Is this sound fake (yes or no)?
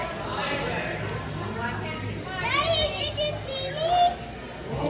no